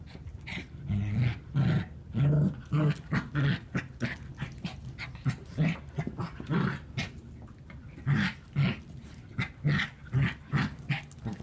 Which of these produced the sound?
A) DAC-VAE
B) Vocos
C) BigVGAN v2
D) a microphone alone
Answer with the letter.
D